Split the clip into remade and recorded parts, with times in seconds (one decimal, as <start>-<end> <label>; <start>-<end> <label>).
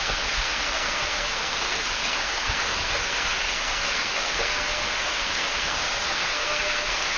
0.0-7.2 remade